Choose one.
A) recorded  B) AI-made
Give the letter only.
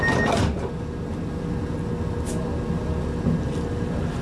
A